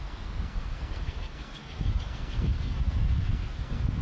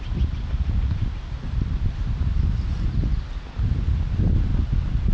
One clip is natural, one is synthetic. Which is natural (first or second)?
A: second